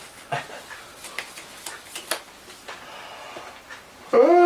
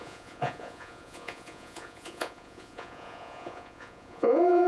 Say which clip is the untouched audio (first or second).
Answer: first